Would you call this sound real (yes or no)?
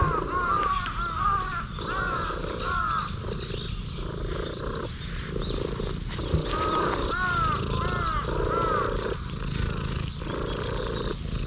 yes